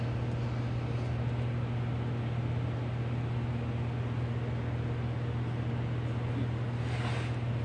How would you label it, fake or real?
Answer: real